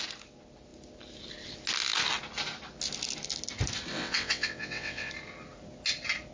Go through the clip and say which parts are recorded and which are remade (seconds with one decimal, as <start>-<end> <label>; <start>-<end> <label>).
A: 0.0-3.9 recorded; 3.9-5.1 remade; 5.1-6.3 recorded